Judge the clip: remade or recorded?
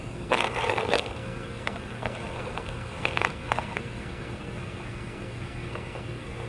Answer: remade